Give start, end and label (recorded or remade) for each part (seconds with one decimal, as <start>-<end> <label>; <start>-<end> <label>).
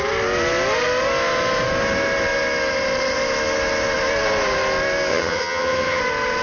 0.0-5.1 recorded; 5.1-6.0 remade; 6.0-6.4 recorded